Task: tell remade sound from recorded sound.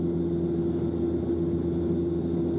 recorded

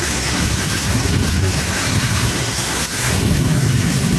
remade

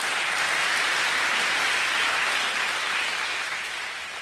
recorded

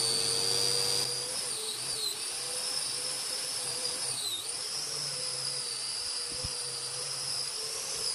recorded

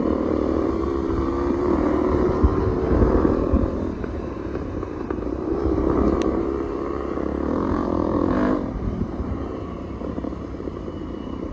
remade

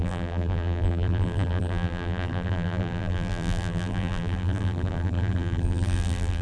remade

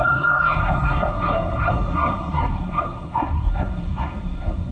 remade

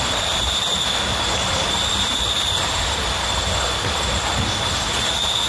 recorded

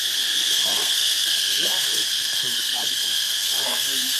remade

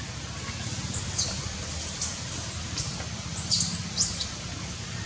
recorded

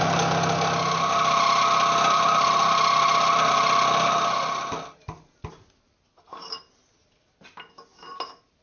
recorded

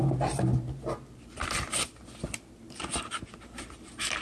remade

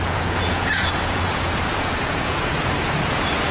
remade